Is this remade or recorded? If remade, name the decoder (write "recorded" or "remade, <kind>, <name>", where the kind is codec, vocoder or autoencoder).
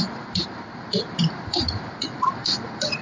remade, vocoder, BigVGAN v2